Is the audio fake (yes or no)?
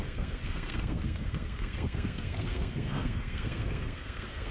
yes